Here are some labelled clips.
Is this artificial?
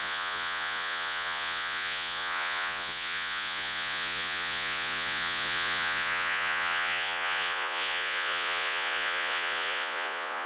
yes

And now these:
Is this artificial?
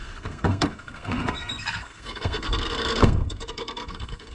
yes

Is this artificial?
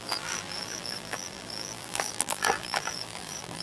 yes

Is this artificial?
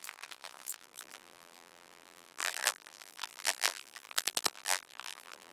yes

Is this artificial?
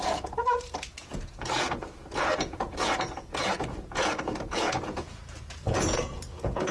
yes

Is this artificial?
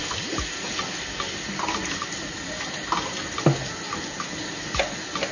no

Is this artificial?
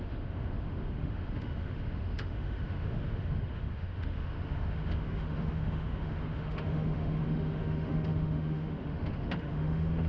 yes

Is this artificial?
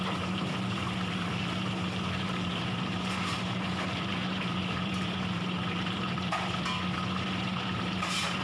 yes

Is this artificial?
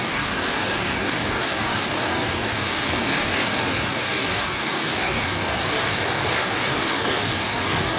yes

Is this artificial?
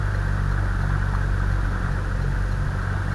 no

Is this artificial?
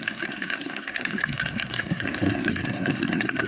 yes